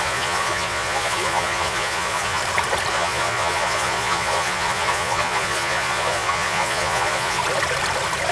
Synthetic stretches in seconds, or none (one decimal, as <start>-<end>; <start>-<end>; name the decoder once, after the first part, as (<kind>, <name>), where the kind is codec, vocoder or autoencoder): 0.0-2.4 (vocoder, Vocos); 2.9-7.4